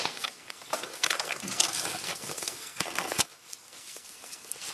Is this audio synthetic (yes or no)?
yes